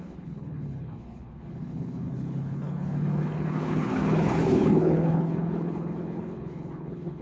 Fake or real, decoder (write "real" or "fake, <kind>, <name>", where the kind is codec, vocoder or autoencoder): fake, codec, HILCodec